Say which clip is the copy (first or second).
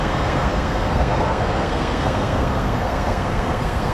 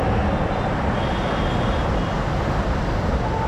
first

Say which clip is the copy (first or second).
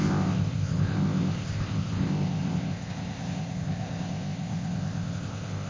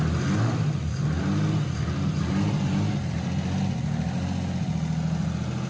first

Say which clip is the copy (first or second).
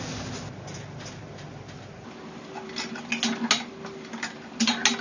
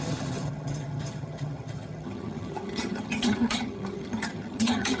second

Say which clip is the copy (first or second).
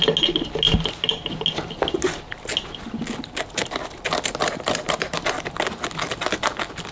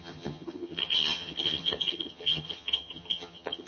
second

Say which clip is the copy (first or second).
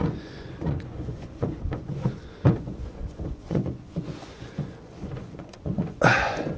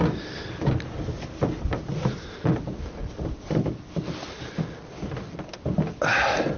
first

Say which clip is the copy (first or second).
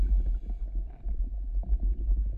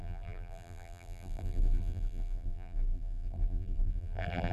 second